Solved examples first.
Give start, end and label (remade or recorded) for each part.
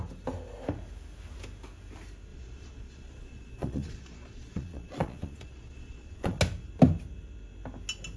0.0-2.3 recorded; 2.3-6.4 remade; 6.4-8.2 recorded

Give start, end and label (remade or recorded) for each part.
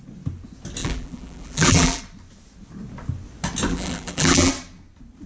0.0-0.8 recorded; 0.8-2.0 remade; 2.0-3.7 recorded; 3.7-4.5 remade; 4.5-5.3 recorded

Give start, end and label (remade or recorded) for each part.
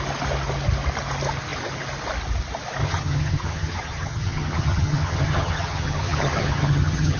0.0-2.8 recorded; 2.8-7.2 remade